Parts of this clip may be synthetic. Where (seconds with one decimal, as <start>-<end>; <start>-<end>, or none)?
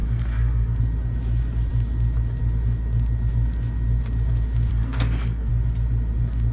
0.0-0.8; 4.7-5.5